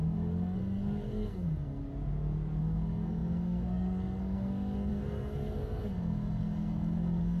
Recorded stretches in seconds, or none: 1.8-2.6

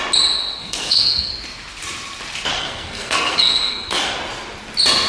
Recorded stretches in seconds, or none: 0.0-0.6; 1.3-2.5; 4.2-5.1

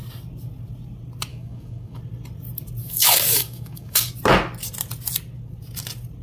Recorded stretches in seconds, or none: 0.0-1.3; 2.0-2.8; 4.1-6.2

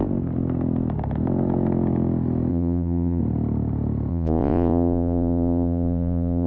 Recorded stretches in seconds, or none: 0.0-2.5; 3.2-4.1